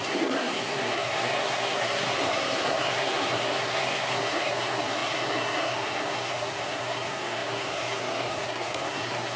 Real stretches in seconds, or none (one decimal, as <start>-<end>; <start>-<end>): none